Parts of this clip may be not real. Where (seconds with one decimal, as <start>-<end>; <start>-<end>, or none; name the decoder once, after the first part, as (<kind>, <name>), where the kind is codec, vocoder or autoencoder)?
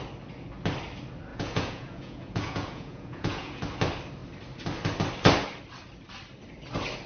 1.3-3.6 (vocoder, Vocos)